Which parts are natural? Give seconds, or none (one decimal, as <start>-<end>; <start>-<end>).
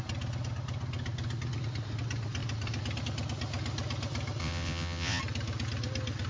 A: 0.0-4.4; 5.2-6.3